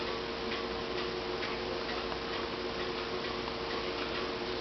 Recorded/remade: recorded